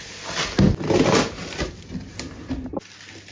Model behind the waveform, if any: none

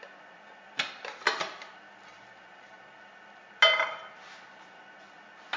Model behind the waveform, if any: none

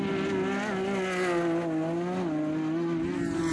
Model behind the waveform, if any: none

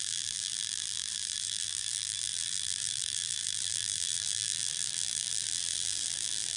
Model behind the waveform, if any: vocoder, BigVGAN v2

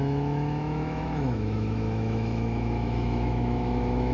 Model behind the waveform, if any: autoencoder, DAC-VAE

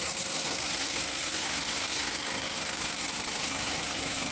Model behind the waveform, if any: codec, SNAC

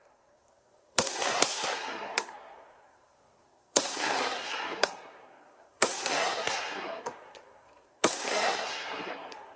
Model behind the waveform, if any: codec, SNAC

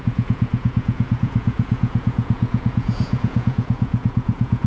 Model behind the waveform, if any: vocoder, Vocos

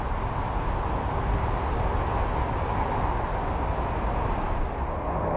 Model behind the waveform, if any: none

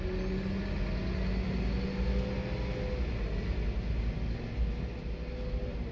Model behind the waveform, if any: none